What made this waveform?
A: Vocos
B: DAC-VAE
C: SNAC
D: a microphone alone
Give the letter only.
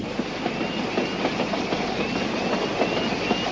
D